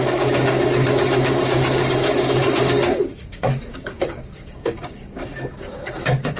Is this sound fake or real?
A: fake